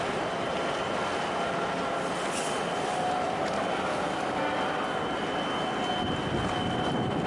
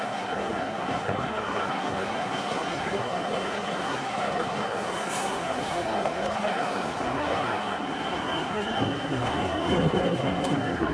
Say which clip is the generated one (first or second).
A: second